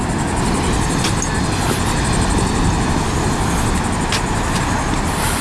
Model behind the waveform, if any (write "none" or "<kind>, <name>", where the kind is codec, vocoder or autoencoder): none